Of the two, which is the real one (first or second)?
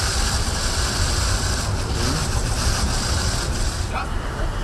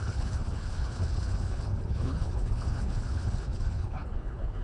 first